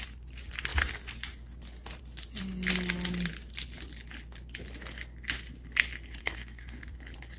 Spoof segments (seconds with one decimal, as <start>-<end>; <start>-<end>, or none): 6.2-6.8